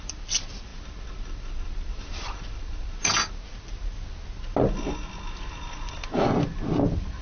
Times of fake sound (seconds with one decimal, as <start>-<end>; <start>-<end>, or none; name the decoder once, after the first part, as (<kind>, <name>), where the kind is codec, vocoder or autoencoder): none